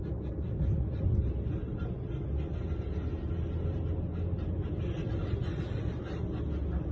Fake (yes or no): no